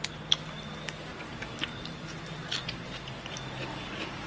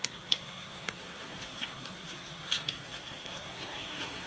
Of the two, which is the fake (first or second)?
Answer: second